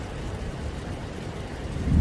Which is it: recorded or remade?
remade